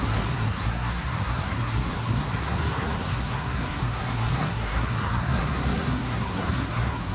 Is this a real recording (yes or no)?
no